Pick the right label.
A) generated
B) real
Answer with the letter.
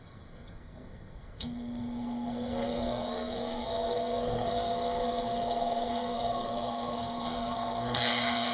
A